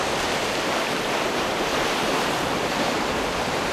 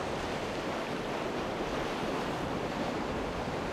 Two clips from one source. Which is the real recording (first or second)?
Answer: second